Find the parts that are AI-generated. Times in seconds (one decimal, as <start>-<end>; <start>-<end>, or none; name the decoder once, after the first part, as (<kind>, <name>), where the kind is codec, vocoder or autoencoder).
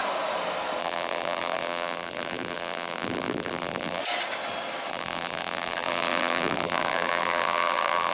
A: 0.8-4.0 (vocoder, BigVGAN v2); 4.9-8.1